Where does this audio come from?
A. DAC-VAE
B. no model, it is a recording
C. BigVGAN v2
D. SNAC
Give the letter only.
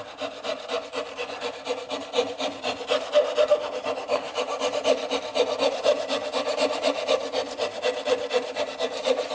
B